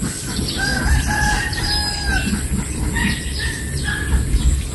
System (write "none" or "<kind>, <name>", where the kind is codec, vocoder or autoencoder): none